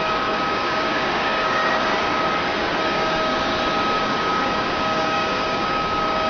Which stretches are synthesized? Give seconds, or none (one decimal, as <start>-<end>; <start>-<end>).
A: 0.0-1.6; 2.8-3.5; 4.0-6.3